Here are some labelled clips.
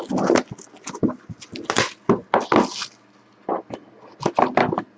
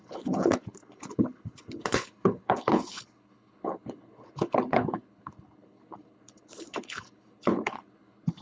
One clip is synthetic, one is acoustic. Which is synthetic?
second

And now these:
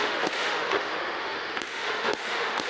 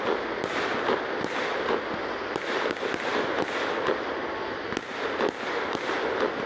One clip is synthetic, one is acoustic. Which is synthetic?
first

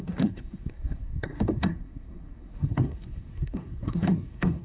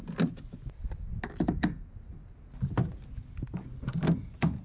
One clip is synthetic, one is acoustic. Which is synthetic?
first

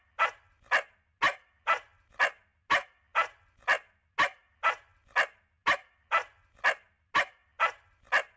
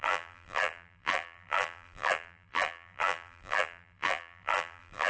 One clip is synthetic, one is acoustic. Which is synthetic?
second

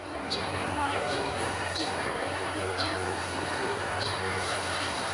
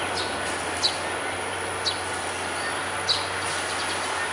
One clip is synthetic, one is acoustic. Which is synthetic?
first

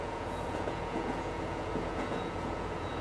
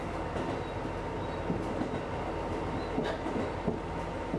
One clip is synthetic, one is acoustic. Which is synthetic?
first